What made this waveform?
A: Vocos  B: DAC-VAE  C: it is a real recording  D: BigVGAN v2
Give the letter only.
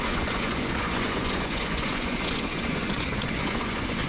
A